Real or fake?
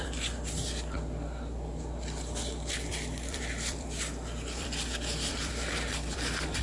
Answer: fake